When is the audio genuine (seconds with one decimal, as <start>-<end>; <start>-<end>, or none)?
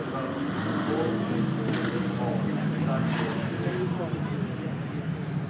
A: 0.0-3.0; 4.2-5.5